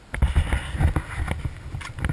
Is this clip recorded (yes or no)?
yes